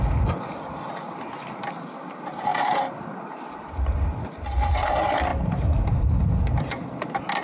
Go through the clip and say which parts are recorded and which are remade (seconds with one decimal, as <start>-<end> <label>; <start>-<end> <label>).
0.0-7.4 recorded